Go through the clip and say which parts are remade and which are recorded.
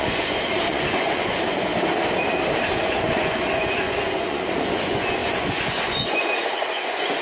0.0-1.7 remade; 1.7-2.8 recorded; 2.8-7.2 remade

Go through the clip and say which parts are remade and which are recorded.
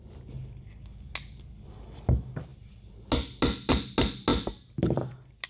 0.0-5.5 recorded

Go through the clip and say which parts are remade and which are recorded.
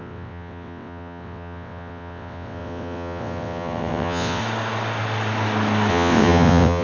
0.0-4.4 remade; 4.4-5.9 recorded; 5.9-6.8 remade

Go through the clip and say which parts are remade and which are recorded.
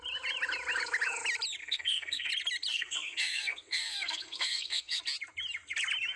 0.0-1.6 recorded; 1.6-2.3 remade; 2.3-2.7 recorded; 2.7-5.0 remade; 5.0-6.2 recorded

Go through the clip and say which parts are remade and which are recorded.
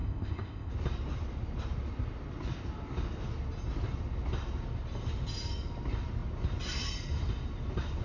0.0-0.7 remade; 0.7-8.0 recorded